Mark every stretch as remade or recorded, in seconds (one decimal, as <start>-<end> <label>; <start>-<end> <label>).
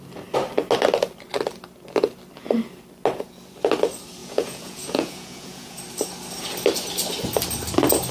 0.0-4.2 recorded; 4.2-5.8 remade; 5.8-8.1 recorded